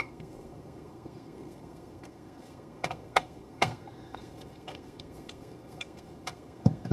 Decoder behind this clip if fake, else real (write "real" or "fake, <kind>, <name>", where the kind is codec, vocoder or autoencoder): fake, codec, SNAC